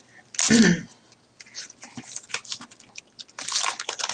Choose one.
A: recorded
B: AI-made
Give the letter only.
A